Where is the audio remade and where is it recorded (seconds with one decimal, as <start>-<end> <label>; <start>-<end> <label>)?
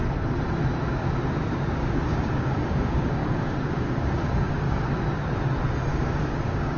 0.0-1.8 recorded; 1.8-4.9 remade; 4.9-5.9 recorded; 5.9-6.8 remade